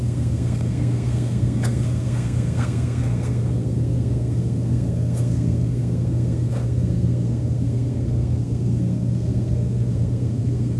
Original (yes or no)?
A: no